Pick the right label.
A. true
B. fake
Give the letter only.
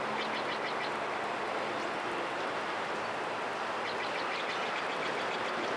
A